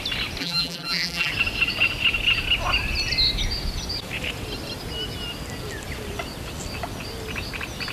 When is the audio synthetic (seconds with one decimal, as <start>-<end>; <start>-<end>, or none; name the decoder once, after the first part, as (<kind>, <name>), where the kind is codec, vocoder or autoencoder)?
0.4-1.3 (vocoder, BigVGAN v2)